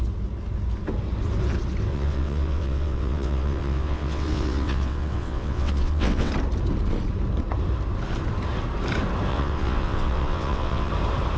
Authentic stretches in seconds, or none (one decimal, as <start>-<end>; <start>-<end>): 0.0-1.9; 6.3-9.3; 10.9-11.4